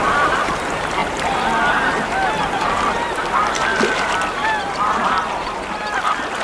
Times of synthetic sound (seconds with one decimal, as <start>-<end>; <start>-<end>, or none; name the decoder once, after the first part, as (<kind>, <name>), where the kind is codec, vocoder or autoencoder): none